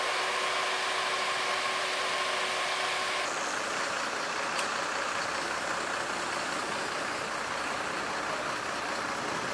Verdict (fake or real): real